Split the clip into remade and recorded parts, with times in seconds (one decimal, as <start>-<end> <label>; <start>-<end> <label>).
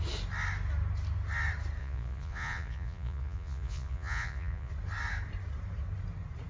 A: 0.0-1.8 recorded; 1.8-4.7 remade; 4.7-6.5 recorded